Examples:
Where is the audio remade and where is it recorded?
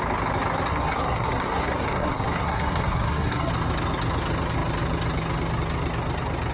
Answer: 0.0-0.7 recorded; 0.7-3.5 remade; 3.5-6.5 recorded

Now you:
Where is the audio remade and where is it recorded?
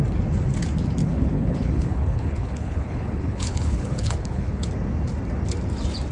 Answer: 0.0-1.0 recorded; 1.0-4.7 remade; 4.7-6.1 recorded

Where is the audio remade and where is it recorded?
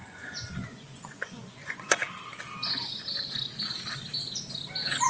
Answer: 0.0-2.0 remade; 2.0-5.1 recorded